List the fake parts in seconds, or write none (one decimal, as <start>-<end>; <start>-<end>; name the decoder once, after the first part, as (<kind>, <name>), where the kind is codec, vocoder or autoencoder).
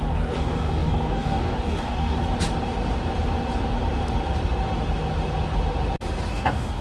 0.0-2.2 (codec, DAC); 6.3-6.8